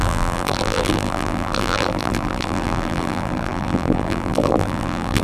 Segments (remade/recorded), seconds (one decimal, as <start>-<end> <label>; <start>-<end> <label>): 0.0-5.2 remade